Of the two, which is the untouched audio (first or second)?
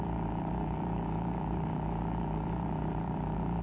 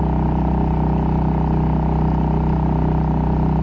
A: second